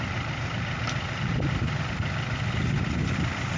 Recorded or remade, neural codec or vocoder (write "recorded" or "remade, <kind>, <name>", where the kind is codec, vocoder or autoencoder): recorded